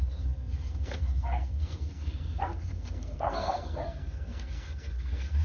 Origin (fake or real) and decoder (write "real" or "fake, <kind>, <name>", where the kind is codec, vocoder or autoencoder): fake, codec, SNAC